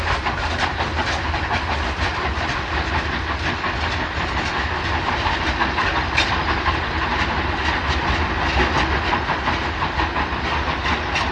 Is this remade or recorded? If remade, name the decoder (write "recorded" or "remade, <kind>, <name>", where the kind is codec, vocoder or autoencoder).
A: recorded